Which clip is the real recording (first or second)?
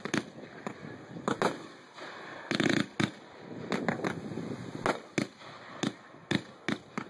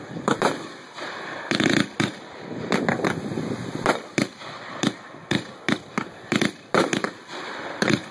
first